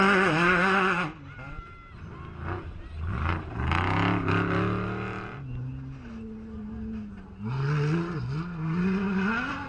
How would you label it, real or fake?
real